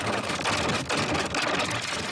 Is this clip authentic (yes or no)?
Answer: yes